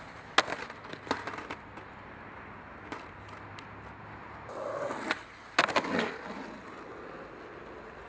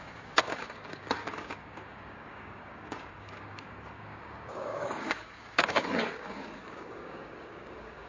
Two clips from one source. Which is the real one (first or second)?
first